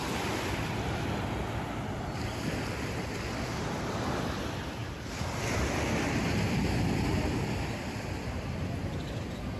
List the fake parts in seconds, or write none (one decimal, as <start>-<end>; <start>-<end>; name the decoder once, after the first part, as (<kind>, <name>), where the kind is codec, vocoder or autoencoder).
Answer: none